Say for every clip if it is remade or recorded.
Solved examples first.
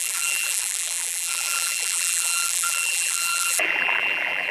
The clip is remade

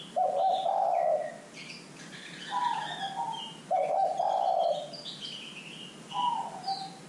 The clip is recorded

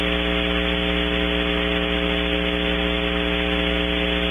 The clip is recorded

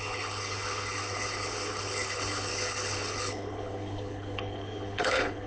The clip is remade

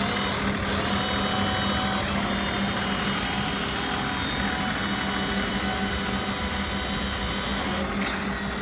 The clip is recorded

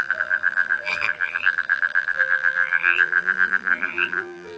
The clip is remade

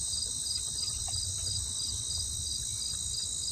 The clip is recorded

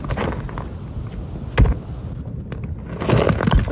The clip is recorded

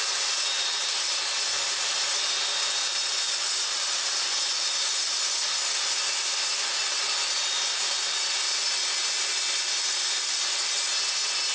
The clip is recorded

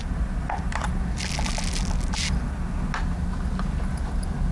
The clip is recorded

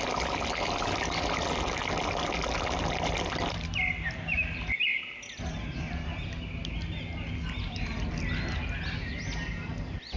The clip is recorded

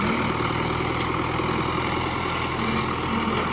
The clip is recorded